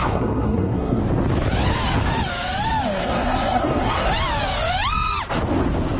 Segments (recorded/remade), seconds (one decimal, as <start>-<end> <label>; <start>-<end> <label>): 0.0-1.0 remade; 1.0-3.0 recorded; 3.0-4.1 remade; 4.1-6.0 recorded